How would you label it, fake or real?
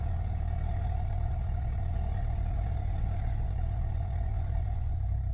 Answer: fake